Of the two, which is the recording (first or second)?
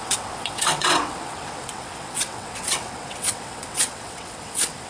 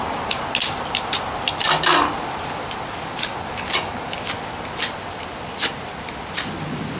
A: second